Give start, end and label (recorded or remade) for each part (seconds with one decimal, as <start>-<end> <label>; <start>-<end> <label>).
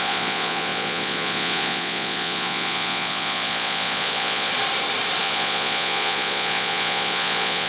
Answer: 0.0-4.5 remade; 4.5-5.2 recorded; 5.2-7.7 remade